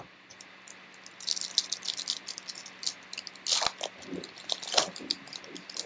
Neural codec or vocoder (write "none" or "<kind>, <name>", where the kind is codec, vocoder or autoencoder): none